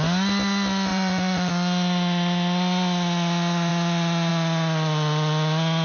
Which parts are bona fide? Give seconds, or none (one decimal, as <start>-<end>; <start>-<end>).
0.0-0.9; 1.5-5.8